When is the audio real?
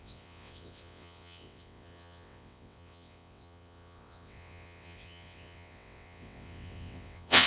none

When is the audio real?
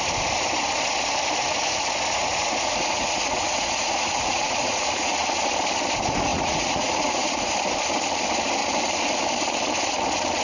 0.0-2.2; 5.3-6.3; 7.5-10.4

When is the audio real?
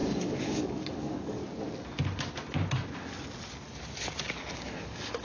1.4-4.5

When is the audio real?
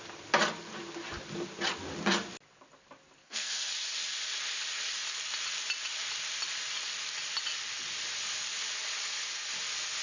0.0-3.2; 3.7-10.0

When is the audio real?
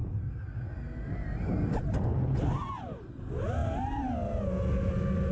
0.0-5.3